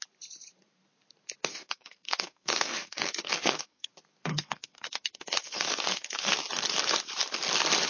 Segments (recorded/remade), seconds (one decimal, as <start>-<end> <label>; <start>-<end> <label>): 0.0-1.5 recorded; 1.5-3.9 remade; 3.9-4.3 recorded; 4.3-6.4 remade; 6.4-7.9 recorded